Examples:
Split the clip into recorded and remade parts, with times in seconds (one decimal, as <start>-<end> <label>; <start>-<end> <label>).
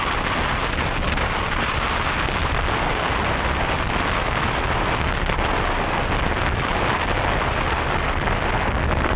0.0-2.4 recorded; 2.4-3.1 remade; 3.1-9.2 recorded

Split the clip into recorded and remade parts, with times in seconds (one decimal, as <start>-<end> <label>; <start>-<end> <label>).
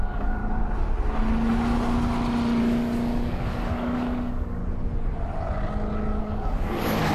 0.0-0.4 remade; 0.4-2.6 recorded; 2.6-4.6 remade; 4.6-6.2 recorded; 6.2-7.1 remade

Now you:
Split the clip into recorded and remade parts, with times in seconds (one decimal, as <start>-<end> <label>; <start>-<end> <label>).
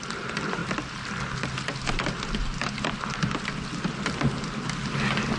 0.0-5.4 recorded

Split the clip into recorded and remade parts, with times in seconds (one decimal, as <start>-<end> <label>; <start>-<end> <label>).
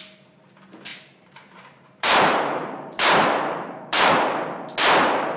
0.0-0.9 recorded; 0.9-4.1 remade; 4.1-5.4 recorded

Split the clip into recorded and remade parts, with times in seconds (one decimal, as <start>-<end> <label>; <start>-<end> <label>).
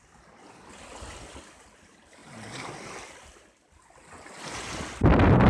0.0-5.5 recorded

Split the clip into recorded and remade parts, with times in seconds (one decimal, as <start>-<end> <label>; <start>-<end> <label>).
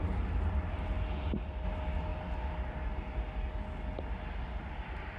0.0-5.2 recorded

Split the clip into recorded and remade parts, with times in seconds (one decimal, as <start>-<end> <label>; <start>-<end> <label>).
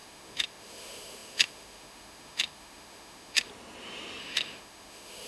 0.0-3.5 remade; 3.5-4.2 recorded; 4.2-5.3 remade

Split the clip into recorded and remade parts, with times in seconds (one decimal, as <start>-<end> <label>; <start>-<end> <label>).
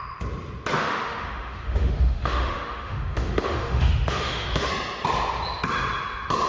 0.0-0.8 recorded; 0.8-4.7 remade; 4.7-6.5 recorded